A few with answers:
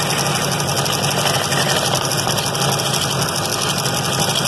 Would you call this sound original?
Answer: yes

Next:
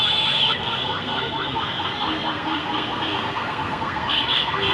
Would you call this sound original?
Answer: no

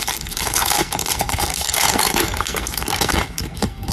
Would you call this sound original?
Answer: no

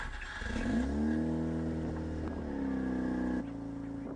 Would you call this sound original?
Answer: yes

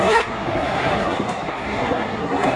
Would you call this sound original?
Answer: no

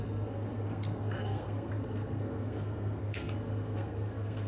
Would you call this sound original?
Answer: no